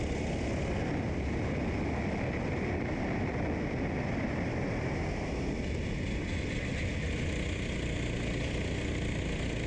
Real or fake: real